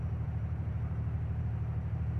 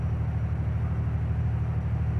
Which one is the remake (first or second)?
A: first